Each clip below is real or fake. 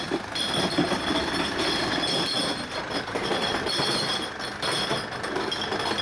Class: real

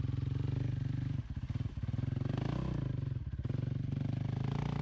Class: real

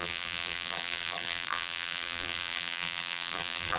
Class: fake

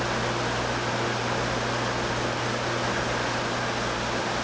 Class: real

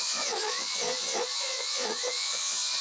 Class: fake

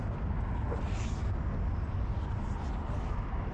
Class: real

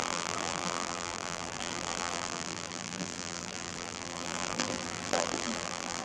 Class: fake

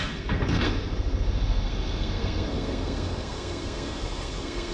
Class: fake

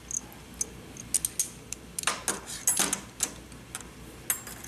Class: real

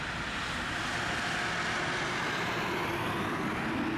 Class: real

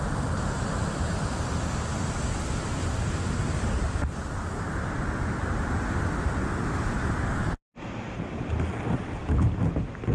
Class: real